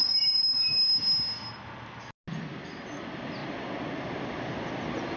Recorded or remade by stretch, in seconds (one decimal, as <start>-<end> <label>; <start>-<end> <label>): 0.0-5.2 recorded